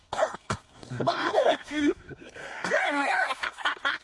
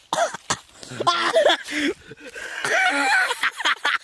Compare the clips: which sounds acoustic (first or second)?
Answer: second